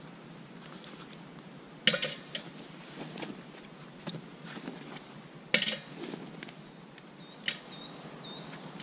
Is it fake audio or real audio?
real